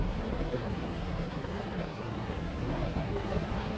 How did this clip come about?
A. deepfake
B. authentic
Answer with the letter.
A